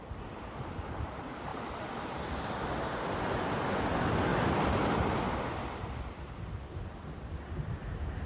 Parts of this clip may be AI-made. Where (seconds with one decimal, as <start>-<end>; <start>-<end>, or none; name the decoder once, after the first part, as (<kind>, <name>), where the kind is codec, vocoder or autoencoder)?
1.5-2.3 (vocoder, BigVGAN v2); 4.3-5.5